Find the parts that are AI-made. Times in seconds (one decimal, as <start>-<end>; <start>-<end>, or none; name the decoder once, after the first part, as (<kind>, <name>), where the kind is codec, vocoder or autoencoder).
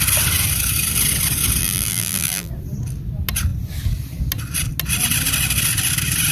1.6-2.5 (vocoder, BigVGAN v2)